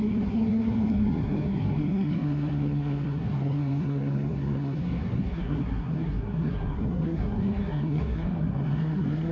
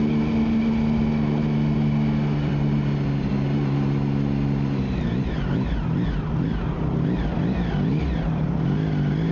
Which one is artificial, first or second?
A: first